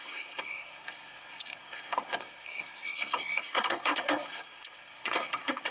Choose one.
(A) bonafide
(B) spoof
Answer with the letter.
B